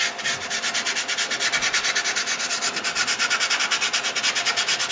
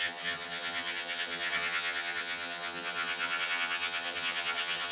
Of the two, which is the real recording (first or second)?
first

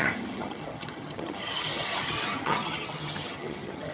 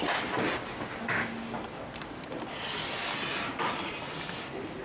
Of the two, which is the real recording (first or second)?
second